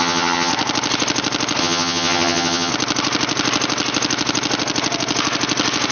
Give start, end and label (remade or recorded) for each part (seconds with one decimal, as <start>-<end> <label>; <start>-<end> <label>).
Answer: 0.0-0.5 remade; 0.5-1.6 recorded; 1.6-2.7 remade; 2.7-5.9 recorded